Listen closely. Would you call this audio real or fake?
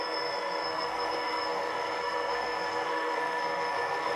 fake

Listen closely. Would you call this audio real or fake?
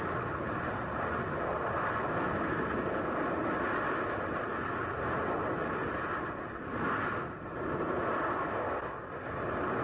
real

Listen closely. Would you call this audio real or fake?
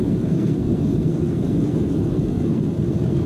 fake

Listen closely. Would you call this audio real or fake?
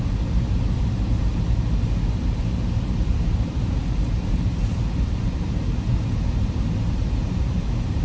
fake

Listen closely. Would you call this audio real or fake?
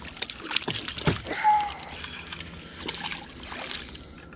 real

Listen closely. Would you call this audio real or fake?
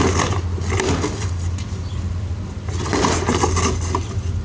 real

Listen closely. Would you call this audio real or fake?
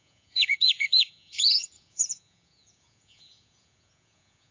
fake